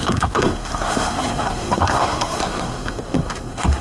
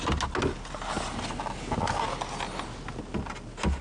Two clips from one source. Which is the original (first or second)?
second